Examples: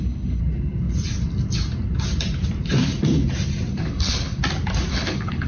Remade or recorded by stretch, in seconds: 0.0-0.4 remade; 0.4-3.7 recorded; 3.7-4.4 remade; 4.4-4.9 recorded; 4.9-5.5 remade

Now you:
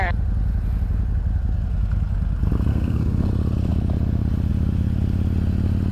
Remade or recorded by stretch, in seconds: 0.0-2.7 recorded; 2.7-3.3 remade; 3.3-5.9 recorded

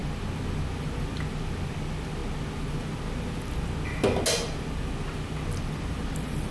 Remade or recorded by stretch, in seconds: 0.0-6.5 recorded

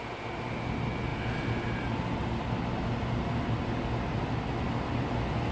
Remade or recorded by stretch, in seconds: 0.0-5.5 recorded